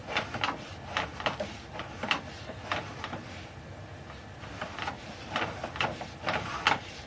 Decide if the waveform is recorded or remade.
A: recorded